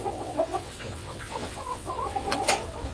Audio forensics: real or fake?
fake